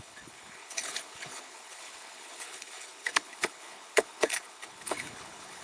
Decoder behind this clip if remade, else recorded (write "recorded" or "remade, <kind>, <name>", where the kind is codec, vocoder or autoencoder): remade, codec, HILCodec